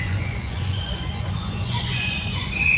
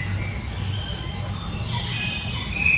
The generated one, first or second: first